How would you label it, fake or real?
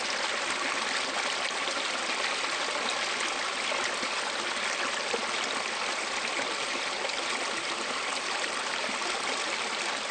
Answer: real